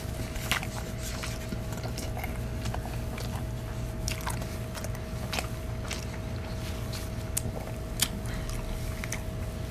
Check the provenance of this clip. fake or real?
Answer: real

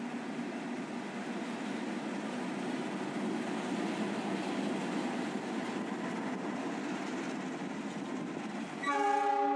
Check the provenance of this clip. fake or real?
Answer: real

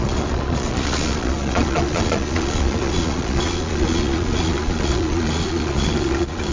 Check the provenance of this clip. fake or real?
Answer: fake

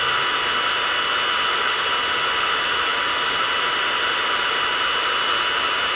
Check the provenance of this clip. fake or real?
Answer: real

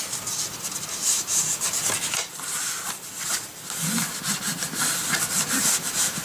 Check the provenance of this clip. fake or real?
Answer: real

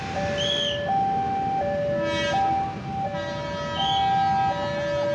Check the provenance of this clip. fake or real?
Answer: real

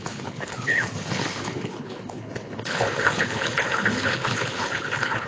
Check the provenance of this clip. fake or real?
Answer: fake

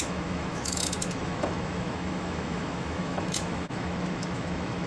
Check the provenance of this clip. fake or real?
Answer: fake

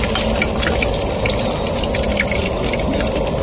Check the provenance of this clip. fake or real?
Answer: real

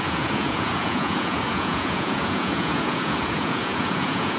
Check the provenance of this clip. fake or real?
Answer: fake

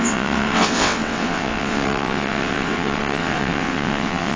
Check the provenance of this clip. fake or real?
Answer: fake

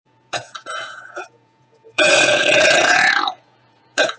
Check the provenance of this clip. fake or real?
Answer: fake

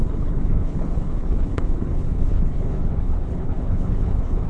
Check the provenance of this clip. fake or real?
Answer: fake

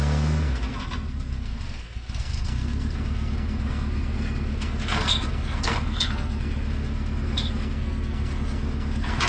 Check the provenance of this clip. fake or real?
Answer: fake